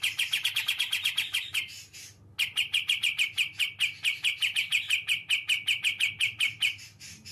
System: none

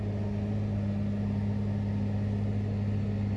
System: none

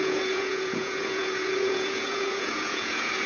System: vocoder, Vocos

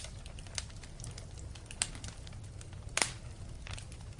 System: none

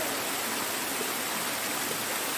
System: none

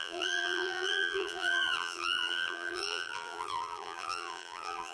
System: vocoder, BigVGAN v2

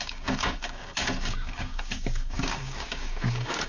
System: codec, DAC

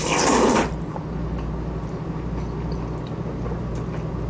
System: none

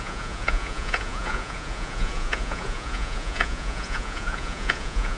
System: vocoder, Vocos